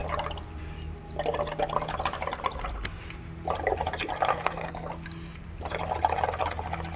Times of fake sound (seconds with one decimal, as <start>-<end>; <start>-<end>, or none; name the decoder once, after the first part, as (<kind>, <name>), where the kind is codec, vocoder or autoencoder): 4.3-4.9 (codec, SNAC)